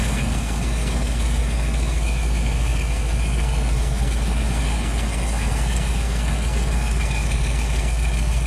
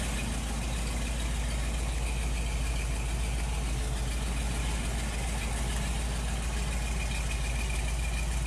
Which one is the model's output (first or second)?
first